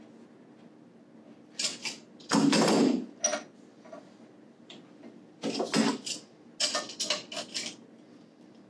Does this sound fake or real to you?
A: real